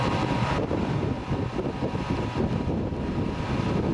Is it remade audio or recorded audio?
recorded